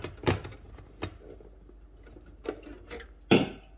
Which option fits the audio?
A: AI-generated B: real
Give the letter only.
B